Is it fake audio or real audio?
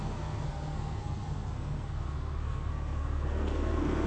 fake